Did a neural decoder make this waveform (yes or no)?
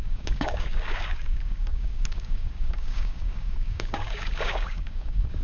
yes